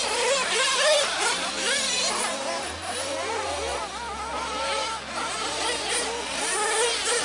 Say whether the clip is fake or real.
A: real